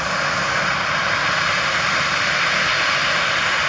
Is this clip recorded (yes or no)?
yes